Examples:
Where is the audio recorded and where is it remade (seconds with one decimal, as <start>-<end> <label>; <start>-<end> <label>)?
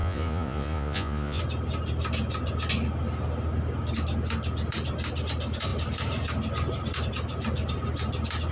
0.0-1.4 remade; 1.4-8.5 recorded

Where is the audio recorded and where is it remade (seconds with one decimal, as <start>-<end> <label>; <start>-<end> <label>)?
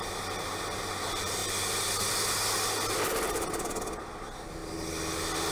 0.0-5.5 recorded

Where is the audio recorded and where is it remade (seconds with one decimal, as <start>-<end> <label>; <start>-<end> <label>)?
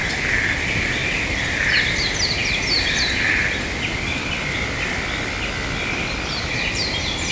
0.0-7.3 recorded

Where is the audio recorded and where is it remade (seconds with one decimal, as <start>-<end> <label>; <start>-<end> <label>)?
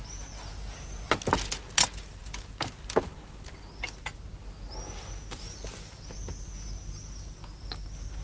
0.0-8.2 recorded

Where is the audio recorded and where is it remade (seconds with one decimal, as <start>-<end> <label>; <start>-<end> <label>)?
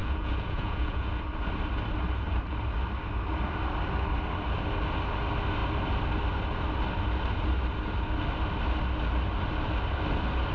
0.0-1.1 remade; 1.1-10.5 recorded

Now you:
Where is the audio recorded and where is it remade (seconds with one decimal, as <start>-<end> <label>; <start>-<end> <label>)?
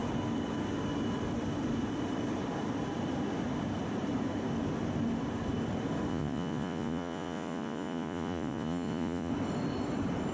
0.0-6.1 recorded; 6.1-9.3 remade; 9.3-10.3 recorded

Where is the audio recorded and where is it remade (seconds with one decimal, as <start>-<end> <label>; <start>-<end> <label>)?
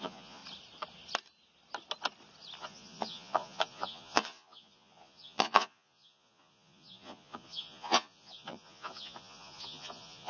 0.0-0.4 remade; 0.4-2.6 recorded; 2.6-10.3 remade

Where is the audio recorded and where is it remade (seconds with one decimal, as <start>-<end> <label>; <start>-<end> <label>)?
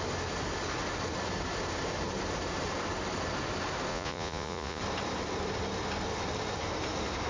0.0-3.9 recorded; 3.9-4.8 remade; 4.8-7.3 recorded